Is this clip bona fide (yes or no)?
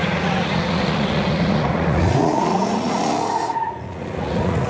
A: no